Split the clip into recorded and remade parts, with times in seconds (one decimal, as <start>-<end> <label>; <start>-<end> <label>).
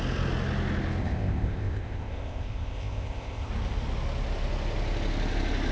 0.0-1.0 recorded; 1.0-3.5 remade; 3.5-5.7 recorded